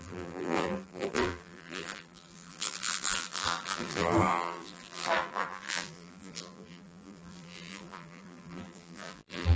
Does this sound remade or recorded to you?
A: remade